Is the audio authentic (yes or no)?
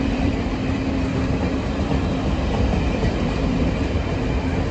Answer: no